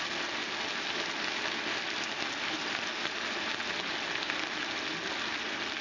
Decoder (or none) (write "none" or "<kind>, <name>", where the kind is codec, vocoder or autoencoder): none